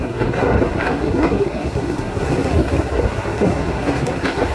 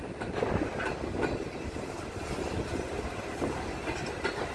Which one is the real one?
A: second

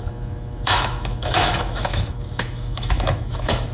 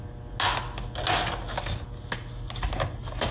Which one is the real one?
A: second